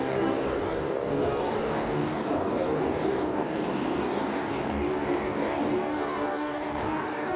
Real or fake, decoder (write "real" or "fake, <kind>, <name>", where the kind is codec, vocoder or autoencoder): fake, codec, DAC